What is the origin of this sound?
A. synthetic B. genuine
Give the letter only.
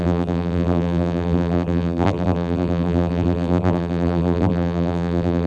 A